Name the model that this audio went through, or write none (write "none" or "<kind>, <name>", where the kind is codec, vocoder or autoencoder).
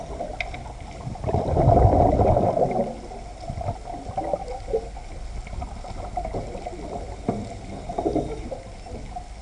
none